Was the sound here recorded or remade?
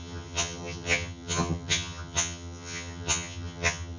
remade